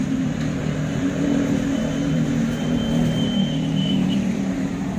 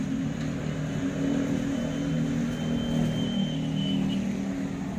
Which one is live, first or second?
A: second